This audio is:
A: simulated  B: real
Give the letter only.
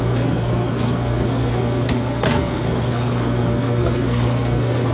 A